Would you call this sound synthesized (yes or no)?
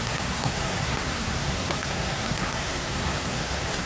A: yes